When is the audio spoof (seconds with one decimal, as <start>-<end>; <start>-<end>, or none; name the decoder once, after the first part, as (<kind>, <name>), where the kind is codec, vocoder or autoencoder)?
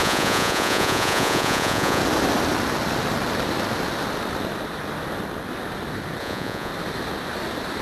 0.0-2.0 (vocoder, Vocos); 6.2-6.7